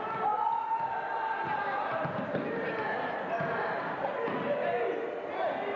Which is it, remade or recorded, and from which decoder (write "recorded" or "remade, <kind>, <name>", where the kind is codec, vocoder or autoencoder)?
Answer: recorded